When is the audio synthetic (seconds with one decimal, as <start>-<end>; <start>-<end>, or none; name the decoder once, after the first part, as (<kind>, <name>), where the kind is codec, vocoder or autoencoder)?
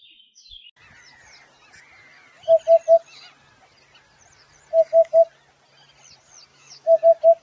6.5-7.0 (autoencoder, DAC-VAE)